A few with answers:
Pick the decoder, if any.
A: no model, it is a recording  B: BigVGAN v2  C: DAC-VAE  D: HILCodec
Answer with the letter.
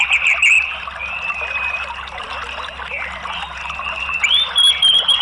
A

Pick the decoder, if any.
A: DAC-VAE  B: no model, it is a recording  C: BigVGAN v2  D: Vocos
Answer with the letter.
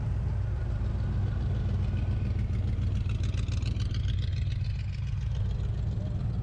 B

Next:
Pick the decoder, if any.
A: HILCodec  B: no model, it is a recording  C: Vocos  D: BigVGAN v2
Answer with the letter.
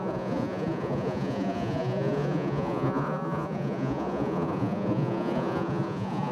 C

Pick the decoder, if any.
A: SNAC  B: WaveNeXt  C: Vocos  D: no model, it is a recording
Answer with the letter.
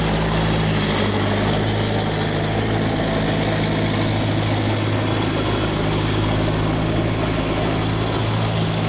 D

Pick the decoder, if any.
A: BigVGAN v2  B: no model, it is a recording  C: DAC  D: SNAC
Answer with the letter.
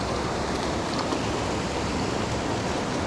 B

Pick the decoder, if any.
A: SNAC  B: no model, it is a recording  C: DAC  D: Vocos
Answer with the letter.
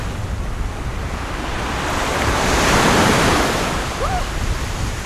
B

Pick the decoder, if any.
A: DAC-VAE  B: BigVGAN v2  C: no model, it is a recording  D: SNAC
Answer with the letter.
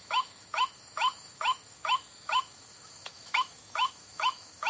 A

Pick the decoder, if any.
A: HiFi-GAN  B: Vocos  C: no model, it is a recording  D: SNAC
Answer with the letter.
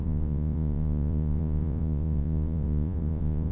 B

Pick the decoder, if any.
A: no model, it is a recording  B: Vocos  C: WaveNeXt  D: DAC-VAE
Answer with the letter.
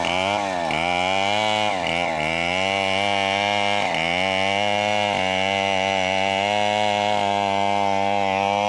A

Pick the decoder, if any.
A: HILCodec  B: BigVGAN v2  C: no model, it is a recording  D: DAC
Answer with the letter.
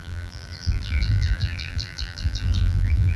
B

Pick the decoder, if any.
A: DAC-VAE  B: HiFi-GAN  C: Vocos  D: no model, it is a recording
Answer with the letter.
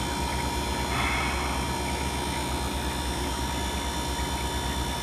D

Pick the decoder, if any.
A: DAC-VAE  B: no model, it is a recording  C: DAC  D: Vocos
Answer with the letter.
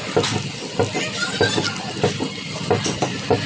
B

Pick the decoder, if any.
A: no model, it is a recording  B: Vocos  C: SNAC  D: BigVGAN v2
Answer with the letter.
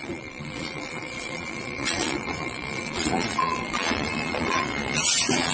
B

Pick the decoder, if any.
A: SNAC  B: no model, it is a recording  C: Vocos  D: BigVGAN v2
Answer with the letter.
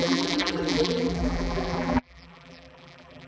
D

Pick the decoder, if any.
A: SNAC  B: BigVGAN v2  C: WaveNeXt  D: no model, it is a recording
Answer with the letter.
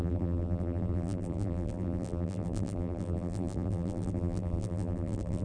B